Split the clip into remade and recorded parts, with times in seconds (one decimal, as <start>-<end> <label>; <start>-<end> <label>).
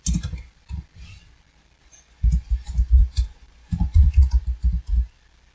0.0-1.8 recorded; 1.8-4.2 remade; 4.2-5.5 recorded